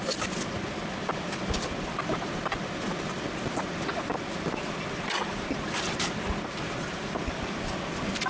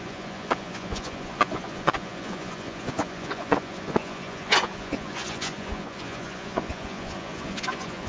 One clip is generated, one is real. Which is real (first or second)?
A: first